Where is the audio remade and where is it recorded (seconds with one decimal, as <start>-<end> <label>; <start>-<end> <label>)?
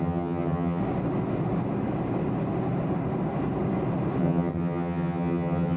0.0-0.8 remade; 0.8-4.2 recorded; 4.2-5.8 remade